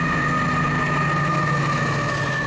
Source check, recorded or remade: recorded